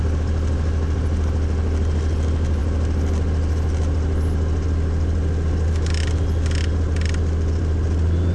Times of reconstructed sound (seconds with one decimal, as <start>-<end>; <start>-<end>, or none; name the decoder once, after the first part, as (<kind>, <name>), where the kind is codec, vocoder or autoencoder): none